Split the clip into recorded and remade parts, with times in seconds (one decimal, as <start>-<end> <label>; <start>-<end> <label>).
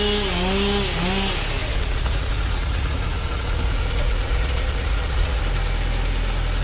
0.0-1.6 recorded; 1.6-5.4 remade; 5.4-6.6 recorded